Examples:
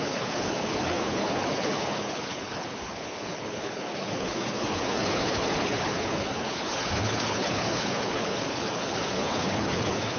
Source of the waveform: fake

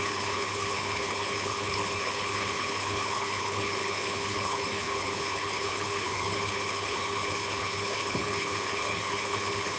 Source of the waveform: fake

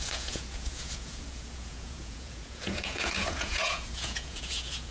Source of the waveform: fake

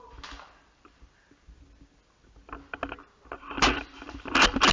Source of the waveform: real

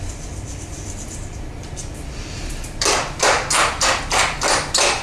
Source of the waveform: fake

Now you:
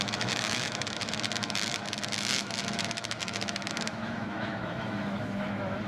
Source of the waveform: fake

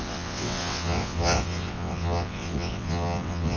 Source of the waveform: fake